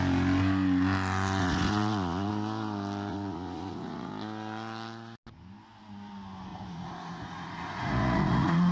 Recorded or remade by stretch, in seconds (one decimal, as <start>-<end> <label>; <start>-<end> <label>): 0.0-1.4 recorded; 1.4-2.3 remade; 2.3-3.1 recorded; 3.1-4.1 remade; 4.1-6.5 recorded; 6.5-8.7 remade